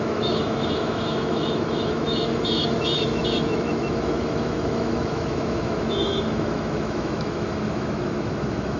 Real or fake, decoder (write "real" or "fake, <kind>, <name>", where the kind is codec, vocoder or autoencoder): fake, autoencoder, DAC-VAE